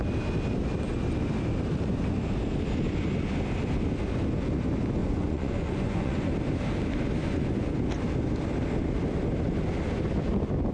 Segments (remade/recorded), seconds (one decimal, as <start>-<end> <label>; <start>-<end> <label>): 0.0-5.0 recorded; 5.0-6.3 remade; 6.3-7.2 recorded; 7.2-7.7 remade; 7.7-10.7 recorded